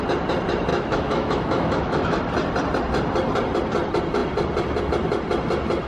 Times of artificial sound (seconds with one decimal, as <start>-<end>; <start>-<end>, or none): 0.7-2.2